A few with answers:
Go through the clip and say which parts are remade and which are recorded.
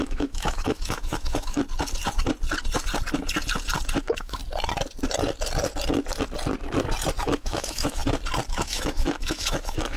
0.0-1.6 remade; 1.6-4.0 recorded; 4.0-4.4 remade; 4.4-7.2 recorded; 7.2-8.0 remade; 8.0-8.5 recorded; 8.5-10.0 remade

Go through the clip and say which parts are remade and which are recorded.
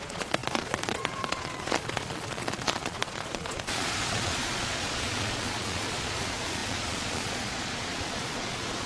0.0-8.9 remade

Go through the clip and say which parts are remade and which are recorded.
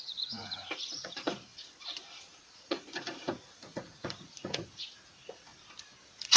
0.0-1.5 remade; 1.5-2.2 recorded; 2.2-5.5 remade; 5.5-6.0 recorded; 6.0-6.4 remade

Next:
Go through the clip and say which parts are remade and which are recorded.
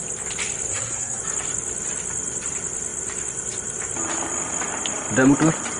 0.0-0.7 recorded; 0.7-1.2 remade; 1.2-5.8 recorded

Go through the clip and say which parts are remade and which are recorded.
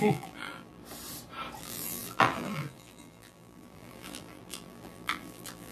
0.0-0.8 remade; 0.8-1.6 recorded; 1.6-5.7 remade